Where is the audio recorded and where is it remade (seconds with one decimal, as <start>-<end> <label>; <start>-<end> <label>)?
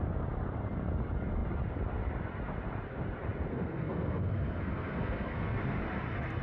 0.0-3.5 recorded; 3.5-5.6 remade; 5.6-6.4 recorded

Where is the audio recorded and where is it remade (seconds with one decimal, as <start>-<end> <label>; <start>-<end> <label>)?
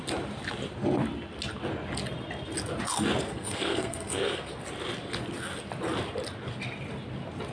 0.0-3.2 recorded; 3.2-4.6 remade; 4.6-7.5 recorded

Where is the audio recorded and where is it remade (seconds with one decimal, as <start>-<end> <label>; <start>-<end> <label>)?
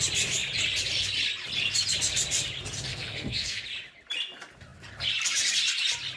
0.0-2.9 recorded; 2.9-3.6 remade; 3.6-6.2 recorded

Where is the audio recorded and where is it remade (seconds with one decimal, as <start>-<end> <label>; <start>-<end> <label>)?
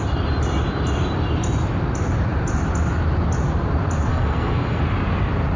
0.0-4.1 recorded; 4.1-4.8 remade; 4.8-5.6 recorded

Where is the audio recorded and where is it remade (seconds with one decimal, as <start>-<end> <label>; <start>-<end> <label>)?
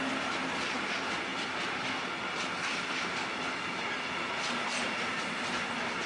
0.0-6.1 recorded